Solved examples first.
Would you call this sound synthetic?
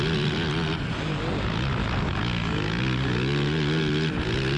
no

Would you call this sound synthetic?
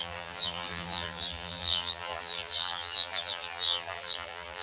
yes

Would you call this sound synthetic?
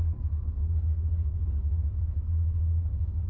no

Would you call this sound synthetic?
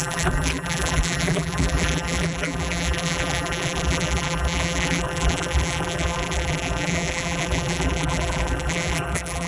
yes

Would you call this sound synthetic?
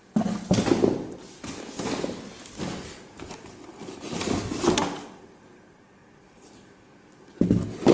no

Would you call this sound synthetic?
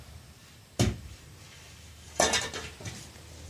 no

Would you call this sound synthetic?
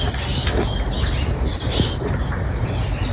no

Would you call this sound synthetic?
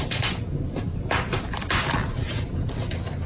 no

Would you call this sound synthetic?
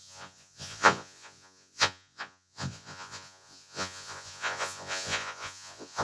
yes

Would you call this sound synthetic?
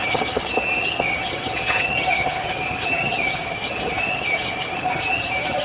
yes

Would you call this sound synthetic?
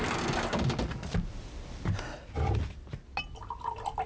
no